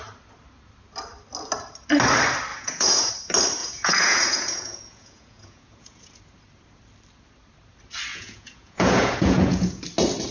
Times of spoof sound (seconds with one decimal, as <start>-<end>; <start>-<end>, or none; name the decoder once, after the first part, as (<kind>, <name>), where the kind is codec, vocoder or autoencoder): 2.5-3.1 (vocoder, Vocos); 3.6-6.2; 8.1-9.8